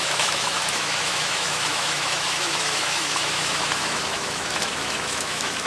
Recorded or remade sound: remade